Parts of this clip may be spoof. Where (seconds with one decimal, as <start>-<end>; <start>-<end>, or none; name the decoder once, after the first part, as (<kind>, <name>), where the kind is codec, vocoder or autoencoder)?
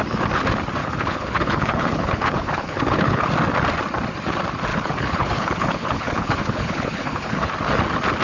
0.8-3.3 (codec, HILCodec); 4.7-7.4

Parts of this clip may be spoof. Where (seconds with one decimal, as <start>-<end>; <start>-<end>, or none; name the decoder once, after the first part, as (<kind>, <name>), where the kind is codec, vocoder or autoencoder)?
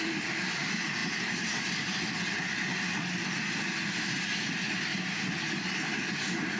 4.9-6.6 (vocoder, BigVGAN v2)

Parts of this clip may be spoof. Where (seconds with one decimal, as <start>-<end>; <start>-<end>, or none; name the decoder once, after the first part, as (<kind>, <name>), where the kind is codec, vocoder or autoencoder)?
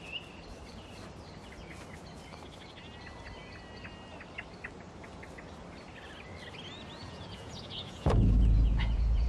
7.0-9.3 (vocoder, Vocos)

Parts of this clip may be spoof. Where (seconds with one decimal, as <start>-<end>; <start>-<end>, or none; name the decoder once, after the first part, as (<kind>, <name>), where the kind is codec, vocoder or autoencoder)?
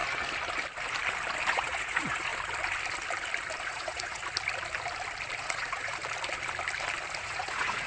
1.5-2.3 (vocoder, Vocos); 3.6-4.2; 5.4-6.0; 7.2-7.9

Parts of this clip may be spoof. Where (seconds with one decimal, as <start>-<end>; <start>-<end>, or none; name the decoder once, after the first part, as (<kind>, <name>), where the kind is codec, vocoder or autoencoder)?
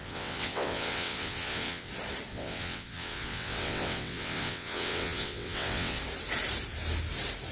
0.0-1.9 (vocoder, WaveNeXt); 2.3-6.0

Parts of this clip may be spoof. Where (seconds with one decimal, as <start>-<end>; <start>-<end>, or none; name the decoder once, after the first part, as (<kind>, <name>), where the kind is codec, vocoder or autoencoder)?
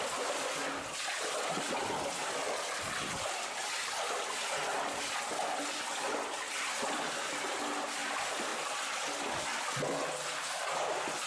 none